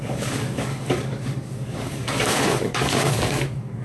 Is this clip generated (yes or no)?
yes